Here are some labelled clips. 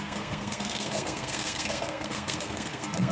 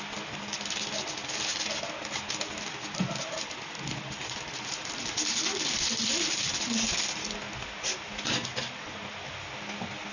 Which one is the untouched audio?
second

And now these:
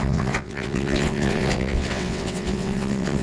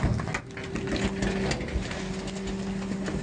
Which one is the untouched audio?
second